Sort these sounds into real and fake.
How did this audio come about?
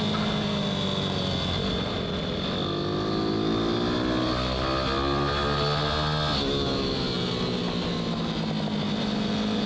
real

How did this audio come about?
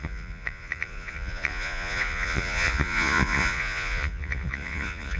fake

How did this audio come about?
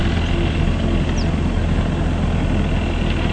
real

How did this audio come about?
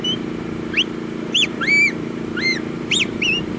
fake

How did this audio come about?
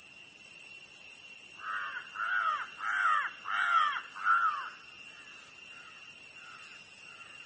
real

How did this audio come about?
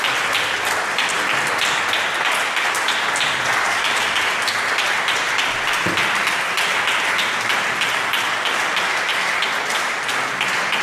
real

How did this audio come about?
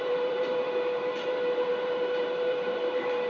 fake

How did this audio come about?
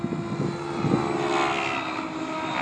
real